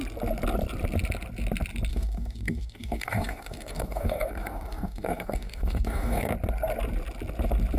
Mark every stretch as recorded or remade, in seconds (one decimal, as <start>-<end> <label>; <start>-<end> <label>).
0.0-1.9 recorded; 1.9-6.3 remade; 6.3-7.8 recorded